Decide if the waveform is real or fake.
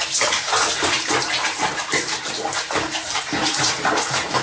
fake